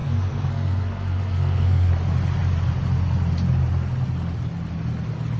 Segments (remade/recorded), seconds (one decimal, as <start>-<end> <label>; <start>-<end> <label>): 0.0-1.9 remade; 1.9-5.4 recorded